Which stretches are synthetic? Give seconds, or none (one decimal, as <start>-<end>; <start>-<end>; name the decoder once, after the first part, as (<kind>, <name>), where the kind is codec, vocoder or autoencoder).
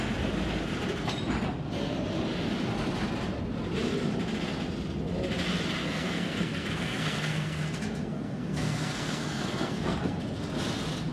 5.8-10.2 (codec, SNAC)